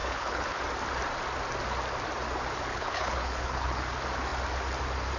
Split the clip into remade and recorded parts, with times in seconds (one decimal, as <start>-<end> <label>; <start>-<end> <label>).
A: 0.0-0.6 remade; 0.6-2.7 recorded; 2.7-3.8 remade; 3.8-5.2 recorded